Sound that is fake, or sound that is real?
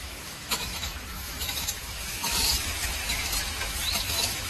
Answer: fake